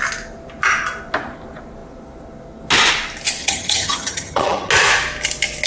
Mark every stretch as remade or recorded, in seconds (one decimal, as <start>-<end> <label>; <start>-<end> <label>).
0.0-3.4 recorded; 3.4-4.7 remade; 4.7-5.7 recorded